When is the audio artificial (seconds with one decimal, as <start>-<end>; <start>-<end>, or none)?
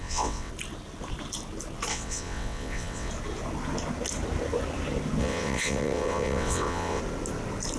0.0-0.5; 1.9-3.1; 5.2-7.0